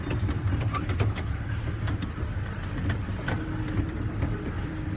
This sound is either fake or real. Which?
fake